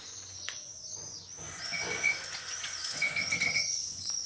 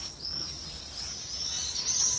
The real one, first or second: second